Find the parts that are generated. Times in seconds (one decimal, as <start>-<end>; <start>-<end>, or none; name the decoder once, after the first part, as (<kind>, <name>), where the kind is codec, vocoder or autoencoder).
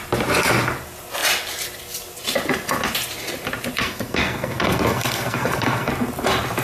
3.8-5.9 (codec, SNAC)